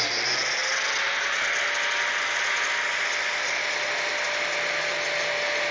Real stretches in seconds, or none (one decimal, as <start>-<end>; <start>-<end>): 0.0-5.7